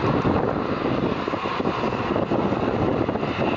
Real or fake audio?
real